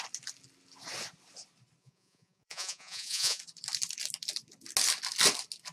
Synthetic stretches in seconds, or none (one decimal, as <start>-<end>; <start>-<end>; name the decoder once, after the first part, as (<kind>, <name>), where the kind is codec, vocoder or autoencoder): 1.8-3.4 (vocoder, Vocos)